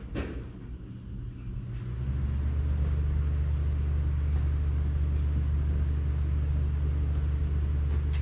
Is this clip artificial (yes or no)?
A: no